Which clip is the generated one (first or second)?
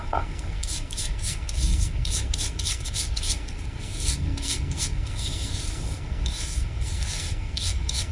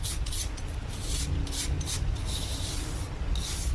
first